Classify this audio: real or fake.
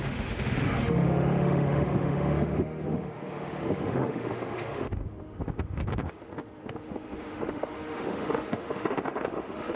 fake